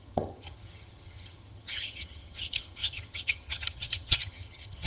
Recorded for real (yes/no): no